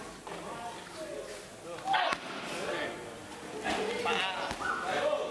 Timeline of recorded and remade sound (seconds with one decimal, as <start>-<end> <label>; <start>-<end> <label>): 0.0-5.3 recorded

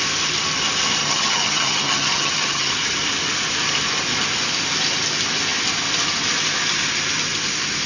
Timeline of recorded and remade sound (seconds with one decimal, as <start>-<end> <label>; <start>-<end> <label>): 0.0-1.0 recorded; 1.0-2.7 remade; 2.7-7.9 recorded

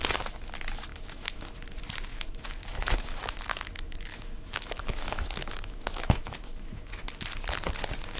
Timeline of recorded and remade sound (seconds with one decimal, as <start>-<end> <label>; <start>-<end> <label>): 0.0-0.9 recorded; 0.9-1.5 remade; 1.5-2.1 recorded; 2.1-7.0 remade; 7.0-8.2 recorded

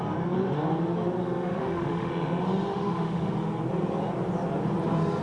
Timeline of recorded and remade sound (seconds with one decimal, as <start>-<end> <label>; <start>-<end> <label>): 0.0-1.2 recorded; 1.2-2.1 remade; 2.1-2.7 recorded; 2.7-3.3 remade; 3.3-5.2 recorded

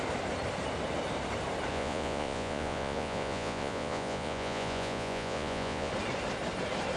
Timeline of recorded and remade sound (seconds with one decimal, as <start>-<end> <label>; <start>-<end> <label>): 0.0-1.7 recorded; 1.7-5.9 remade; 5.9-7.0 recorded

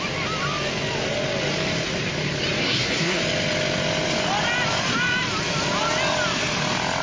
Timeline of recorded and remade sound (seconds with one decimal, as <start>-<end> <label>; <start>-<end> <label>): 0.0-2.6 recorded; 2.6-3.2 remade; 3.2-7.0 recorded

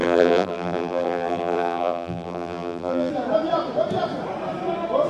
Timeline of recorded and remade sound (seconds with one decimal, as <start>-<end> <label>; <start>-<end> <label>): 0.0-3.1 remade; 3.1-5.1 recorded